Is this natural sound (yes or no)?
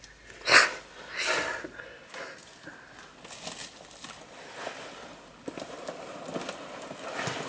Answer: yes